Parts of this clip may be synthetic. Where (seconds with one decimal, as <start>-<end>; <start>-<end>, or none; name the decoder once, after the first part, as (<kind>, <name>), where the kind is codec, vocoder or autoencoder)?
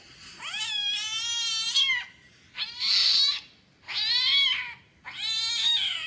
none